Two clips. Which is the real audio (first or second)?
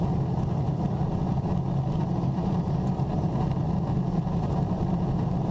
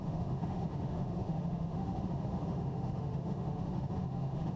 first